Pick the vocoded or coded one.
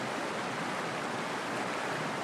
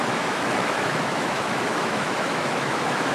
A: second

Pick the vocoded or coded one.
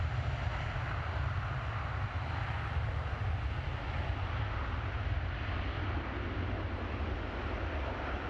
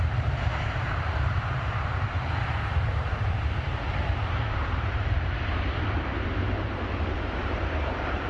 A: second